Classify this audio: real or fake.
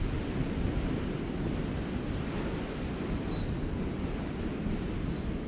real